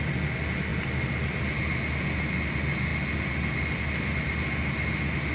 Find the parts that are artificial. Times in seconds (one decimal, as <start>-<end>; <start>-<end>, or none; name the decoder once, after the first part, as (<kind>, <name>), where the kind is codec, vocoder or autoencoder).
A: none